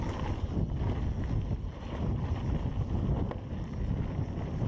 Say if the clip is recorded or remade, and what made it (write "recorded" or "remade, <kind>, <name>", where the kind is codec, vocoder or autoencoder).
recorded